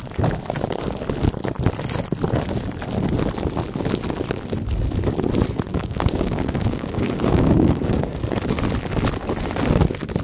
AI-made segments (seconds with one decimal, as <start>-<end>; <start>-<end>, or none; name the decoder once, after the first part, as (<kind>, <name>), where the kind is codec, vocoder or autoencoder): 5.7-8.2 (codec, DAC)